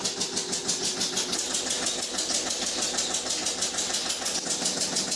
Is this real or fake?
real